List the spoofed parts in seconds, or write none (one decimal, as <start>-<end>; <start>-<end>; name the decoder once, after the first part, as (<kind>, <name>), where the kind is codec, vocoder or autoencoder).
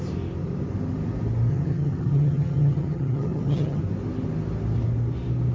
1.5-3.8 (vocoder, HiFi-GAN)